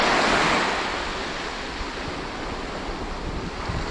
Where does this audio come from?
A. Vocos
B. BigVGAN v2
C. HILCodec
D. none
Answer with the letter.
D